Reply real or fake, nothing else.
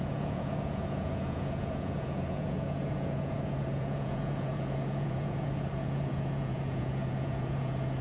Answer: fake